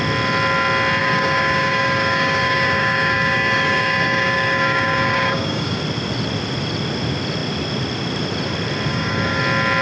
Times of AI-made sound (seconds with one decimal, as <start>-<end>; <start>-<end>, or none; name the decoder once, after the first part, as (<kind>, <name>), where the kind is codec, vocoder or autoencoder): 1.0-5.8 (codec, DAC); 8.9-9.4